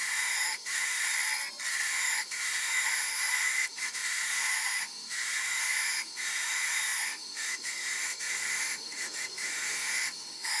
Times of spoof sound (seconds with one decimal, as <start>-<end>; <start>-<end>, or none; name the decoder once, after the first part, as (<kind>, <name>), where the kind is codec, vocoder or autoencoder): 0.0-1.1 (autoencoder, DAC-VAE); 1.7-10.6